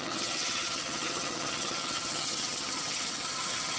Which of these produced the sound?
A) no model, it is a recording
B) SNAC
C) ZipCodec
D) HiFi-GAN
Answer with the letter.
D